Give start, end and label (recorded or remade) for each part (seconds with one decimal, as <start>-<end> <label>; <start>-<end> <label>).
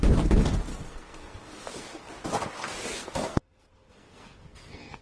0.0-0.7 recorded; 0.7-2.1 remade; 2.1-2.9 recorded; 2.9-5.0 remade